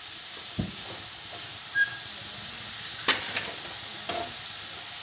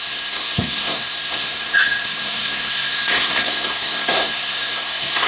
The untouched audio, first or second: first